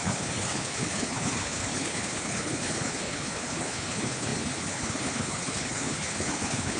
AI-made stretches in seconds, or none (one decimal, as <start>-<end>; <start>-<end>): 0.0-6.8

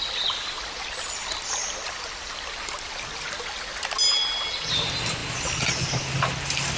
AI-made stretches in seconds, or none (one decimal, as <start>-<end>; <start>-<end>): none

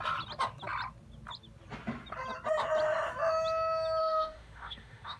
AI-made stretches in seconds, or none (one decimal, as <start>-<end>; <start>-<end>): 4.0-5.2

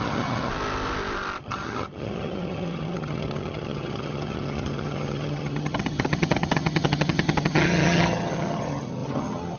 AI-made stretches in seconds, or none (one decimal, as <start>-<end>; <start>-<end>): 0.0-0.5; 1.4-9.6

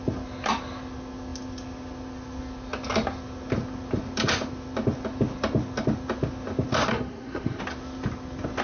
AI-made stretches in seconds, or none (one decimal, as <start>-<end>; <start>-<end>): 6.9-7.6